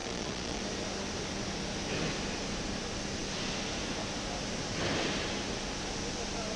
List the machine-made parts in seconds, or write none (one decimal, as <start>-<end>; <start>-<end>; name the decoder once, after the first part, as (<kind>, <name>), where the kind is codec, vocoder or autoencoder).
0.0-0.6 (vocoder, Vocos)